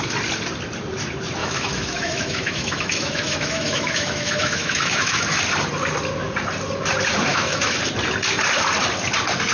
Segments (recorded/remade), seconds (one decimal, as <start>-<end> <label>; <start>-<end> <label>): 0.0-1.4 recorded; 1.4-5.4 remade; 5.4-7.3 recorded; 7.3-7.8 remade; 7.8-9.5 recorded